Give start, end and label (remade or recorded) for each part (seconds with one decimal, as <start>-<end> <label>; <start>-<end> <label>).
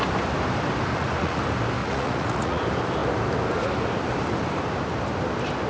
0.0-0.9 recorded; 0.9-1.4 remade; 1.4-1.8 recorded; 1.8-2.6 remade; 2.6-5.7 recorded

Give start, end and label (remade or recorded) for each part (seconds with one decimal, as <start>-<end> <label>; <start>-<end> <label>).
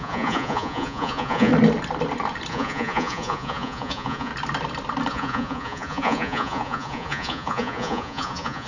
0.0-1.5 remade; 1.5-2.5 recorded; 2.5-4.3 remade; 4.3-5.1 recorded; 5.1-8.7 remade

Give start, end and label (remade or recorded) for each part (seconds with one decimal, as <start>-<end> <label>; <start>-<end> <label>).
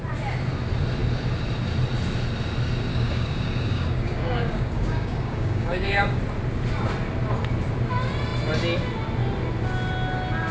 0.0-2.9 recorded; 2.9-6.2 remade; 6.2-10.5 recorded